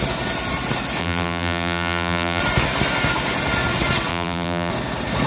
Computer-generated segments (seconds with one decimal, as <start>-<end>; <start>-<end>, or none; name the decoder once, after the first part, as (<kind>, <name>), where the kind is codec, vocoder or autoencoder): 1.0-2.4 (vocoder, BigVGAN v2); 4.1-4.7